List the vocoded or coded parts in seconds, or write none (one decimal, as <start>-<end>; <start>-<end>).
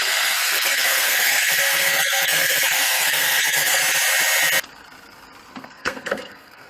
0.0-3.8; 5.5-6.7